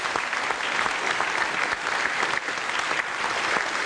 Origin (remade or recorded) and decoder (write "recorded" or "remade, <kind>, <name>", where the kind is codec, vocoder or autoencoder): recorded